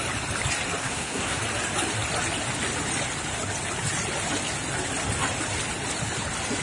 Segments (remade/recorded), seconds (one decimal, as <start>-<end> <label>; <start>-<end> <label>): 0.0-0.8 recorded; 0.8-1.4 remade; 1.4-6.6 recorded